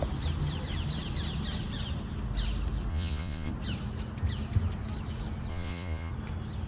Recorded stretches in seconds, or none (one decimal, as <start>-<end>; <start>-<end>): 0.0-2.9; 3.5-5.5; 6.1-6.7